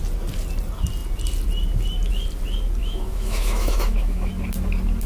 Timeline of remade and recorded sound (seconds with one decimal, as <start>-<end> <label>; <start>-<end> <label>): 0.0-2.8 recorded; 2.8-4.3 remade; 4.3-5.1 recorded